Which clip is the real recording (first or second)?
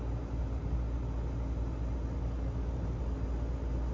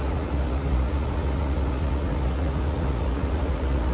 first